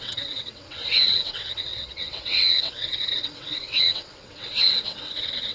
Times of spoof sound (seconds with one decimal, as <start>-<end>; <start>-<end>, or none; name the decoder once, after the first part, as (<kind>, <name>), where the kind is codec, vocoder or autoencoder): 0.0-5.5 (vocoder, WaveNeXt)